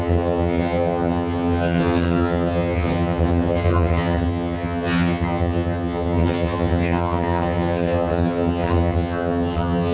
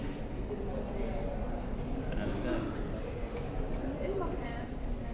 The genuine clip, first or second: second